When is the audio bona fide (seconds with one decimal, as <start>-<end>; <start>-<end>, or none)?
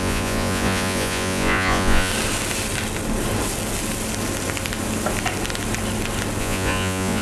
2.1-6.4